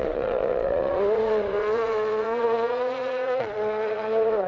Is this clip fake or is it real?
fake